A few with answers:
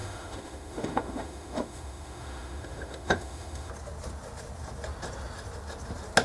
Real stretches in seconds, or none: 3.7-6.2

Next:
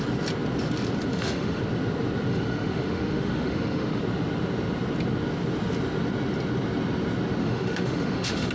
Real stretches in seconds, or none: 0.0-1.1; 1.6-2.3; 4.0-7.4

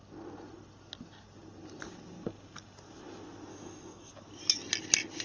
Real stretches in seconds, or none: 0.0-3.5; 4.1-5.2

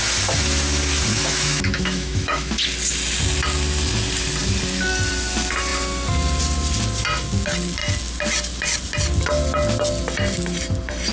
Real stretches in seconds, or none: 0.0-1.1; 2.5-11.1